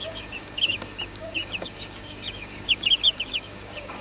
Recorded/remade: remade